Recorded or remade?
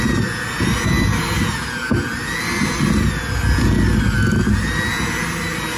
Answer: recorded